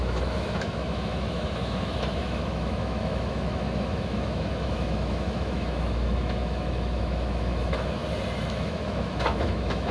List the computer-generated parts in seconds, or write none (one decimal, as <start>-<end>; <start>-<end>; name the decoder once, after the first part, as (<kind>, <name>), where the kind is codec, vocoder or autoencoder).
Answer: 0.0-8.0 (autoencoder, DAC-VAE); 8.5-9.9